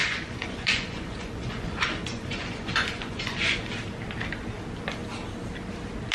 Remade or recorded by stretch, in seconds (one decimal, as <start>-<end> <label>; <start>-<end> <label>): 0.0-3.7 remade; 3.7-6.1 recorded